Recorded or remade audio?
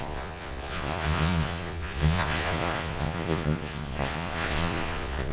remade